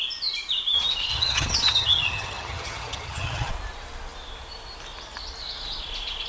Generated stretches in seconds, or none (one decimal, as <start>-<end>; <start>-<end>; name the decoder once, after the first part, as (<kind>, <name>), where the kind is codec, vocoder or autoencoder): 1.1-3.5 (vocoder, HiFi-GAN)